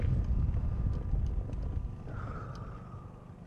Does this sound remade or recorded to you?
recorded